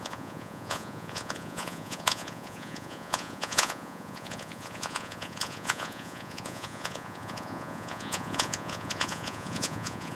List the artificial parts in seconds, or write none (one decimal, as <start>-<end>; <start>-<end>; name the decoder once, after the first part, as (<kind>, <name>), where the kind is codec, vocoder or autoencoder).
0.0-10.1 (vocoder, Vocos)